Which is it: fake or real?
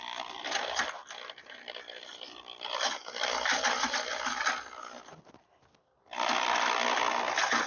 real